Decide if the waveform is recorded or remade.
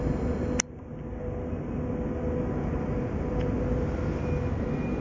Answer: recorded